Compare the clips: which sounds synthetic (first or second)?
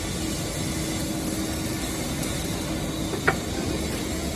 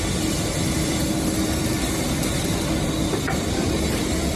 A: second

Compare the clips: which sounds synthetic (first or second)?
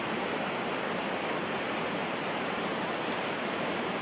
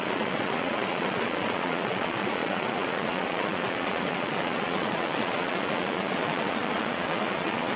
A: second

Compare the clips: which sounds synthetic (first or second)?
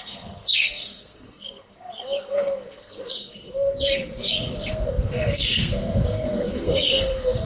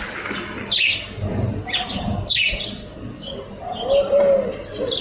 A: first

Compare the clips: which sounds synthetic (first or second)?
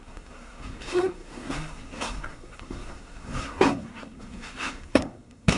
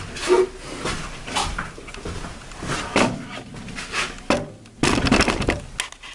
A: first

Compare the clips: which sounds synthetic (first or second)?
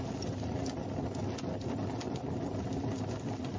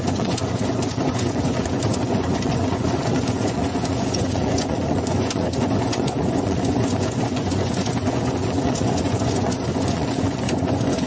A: second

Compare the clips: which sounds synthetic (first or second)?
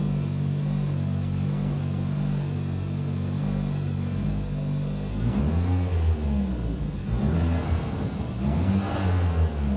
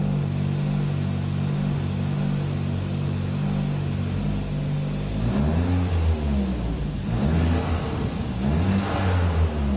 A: first